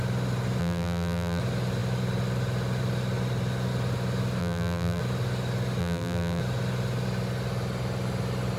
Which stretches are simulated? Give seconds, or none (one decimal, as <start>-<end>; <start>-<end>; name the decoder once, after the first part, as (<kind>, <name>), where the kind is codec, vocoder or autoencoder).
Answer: 0.6-1.4 (vocoder, BigVGAN v2); 4.4-5.0; 5.8-6.4